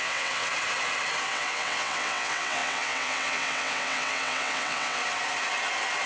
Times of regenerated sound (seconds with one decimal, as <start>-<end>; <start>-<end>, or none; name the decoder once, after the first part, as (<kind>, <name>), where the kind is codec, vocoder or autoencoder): 0.0-0.5 (vocoder, WaveNeXt); 1.2-5.0